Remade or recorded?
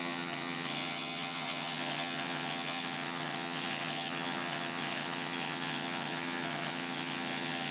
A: remade